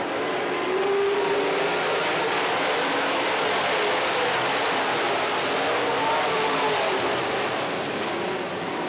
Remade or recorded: recorded